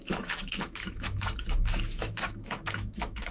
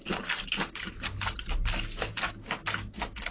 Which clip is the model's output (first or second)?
first